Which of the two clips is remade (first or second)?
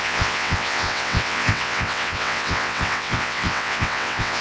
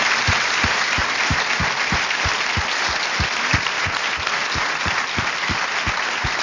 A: first